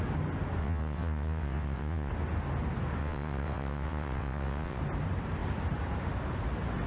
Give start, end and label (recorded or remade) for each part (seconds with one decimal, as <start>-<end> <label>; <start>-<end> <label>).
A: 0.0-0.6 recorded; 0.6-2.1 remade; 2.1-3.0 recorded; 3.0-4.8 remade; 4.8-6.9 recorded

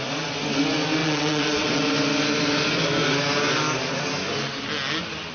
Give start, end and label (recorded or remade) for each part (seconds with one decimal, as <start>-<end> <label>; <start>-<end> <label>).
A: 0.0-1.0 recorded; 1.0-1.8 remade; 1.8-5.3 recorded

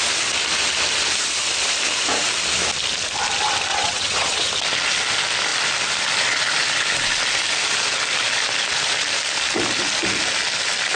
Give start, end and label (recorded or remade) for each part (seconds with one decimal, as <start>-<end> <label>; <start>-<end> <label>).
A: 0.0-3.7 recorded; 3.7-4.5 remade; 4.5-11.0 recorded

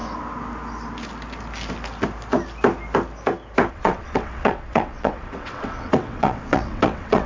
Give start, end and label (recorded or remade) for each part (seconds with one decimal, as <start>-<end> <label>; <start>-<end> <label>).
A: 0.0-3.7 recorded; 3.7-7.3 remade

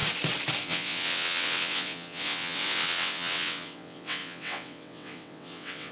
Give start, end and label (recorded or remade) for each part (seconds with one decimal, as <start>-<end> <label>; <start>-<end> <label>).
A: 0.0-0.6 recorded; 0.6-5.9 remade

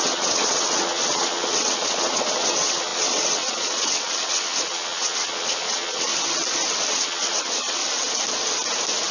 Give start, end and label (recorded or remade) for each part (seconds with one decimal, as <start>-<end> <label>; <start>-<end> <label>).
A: 0.0-6.1 remade; 6.1-6.9 recorded; 6.9-7.8 remade; 7.8-9.1 recorded

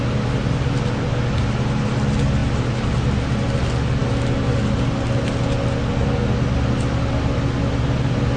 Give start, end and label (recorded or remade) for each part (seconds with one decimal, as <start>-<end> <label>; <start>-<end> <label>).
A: 0.0-8.4 recorded

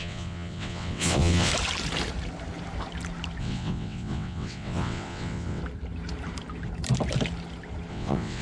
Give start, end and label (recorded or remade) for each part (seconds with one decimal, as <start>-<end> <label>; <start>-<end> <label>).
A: 0.0-1.5 remade; 1.5-3.4 recorded; 3.4-5.6 remade; 5.6-7.9 recorded; 7.9-8.4 remade